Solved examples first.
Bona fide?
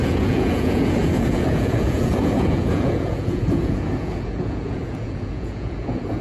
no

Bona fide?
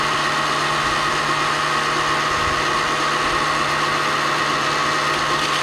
yes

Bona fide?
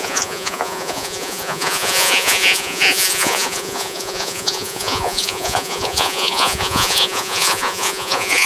no